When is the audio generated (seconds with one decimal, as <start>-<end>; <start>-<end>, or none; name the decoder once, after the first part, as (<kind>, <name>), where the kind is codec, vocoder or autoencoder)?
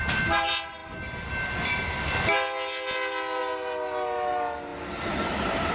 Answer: none